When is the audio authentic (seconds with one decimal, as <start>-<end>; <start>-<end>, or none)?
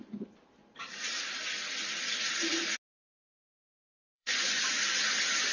0.0-3.4; 4.6-5.5